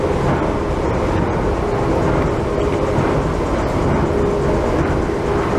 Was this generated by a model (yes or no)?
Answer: no